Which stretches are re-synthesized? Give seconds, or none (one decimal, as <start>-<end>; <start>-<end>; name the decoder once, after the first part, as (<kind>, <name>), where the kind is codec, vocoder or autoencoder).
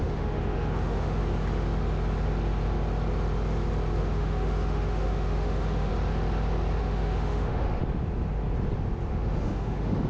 0.0-1.2 (autoencoder, DAC-VAE); 4.0-5.9; 6.8-7.8; 9.1-10.1